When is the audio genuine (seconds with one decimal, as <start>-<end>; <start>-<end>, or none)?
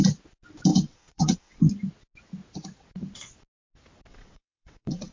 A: 0.0-0.7; 1.7-4.1